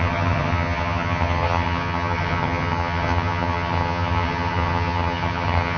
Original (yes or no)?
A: no